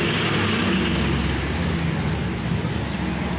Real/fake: real